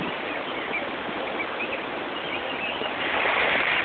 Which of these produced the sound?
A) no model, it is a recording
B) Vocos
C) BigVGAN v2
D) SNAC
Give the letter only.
A